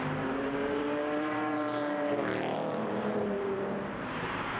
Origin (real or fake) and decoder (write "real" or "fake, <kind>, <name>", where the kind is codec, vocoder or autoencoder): fake, vocoder, BigVGAN v2